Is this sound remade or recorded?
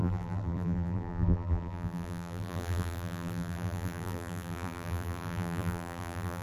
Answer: remade